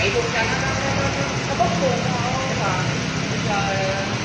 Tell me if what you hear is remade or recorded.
recorded